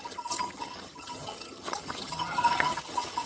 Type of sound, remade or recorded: remade